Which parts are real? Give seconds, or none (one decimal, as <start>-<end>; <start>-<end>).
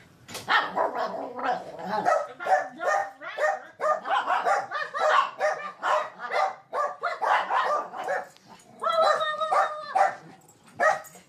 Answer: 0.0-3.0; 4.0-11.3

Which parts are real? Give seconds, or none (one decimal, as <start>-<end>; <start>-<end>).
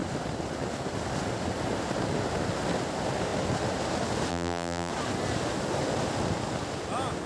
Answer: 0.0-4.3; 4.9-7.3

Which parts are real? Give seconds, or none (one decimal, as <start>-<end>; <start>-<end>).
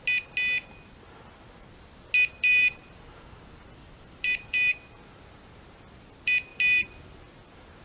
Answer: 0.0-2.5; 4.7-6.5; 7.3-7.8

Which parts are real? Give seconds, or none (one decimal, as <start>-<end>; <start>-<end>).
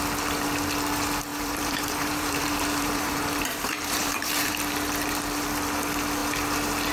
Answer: 0.0-1.3; 4.5-6.9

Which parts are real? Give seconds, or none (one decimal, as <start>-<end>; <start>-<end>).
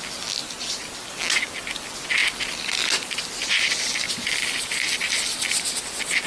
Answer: 0.0-6.3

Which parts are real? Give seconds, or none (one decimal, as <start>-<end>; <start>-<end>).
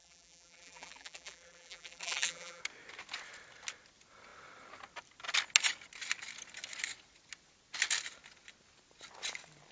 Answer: 2.6-9.7